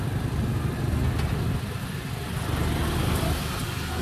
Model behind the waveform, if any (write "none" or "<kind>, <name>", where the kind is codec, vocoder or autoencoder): none